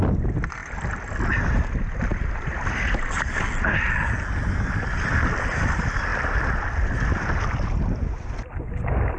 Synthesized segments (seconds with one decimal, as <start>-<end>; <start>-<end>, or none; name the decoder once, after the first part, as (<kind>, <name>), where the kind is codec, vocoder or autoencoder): none